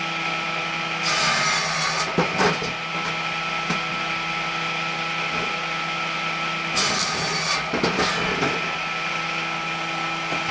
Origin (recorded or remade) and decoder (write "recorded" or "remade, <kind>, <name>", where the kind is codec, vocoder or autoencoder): recorded